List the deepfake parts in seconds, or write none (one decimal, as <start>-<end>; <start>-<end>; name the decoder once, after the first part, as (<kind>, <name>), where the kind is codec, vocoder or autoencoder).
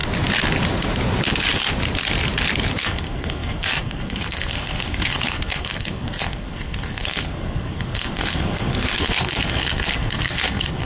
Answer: 2.8-10.8 (codec, SNAC)